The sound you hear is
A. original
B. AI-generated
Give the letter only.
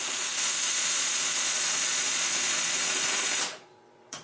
B